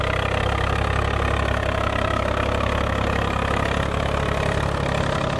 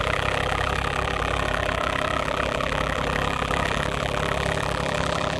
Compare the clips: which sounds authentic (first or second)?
first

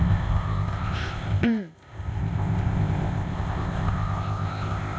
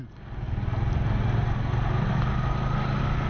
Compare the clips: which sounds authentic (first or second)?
second